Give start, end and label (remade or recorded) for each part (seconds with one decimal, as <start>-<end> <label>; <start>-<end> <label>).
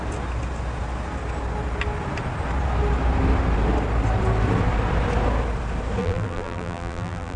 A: 0.0-6.0 recorded; 6.0-7.4 remade